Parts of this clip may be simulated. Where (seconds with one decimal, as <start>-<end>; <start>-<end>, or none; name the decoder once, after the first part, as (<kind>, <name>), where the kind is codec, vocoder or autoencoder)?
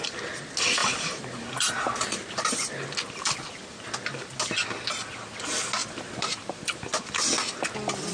0.8-2.2 (vocoder, BigVGAN v2); 5.8-6.6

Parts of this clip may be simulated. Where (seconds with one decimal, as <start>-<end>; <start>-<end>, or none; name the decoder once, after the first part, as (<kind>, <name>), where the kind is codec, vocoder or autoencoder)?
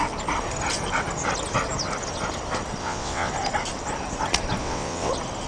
2.8-3.3 (vocoder, WaveNeXt); 4.6-5.1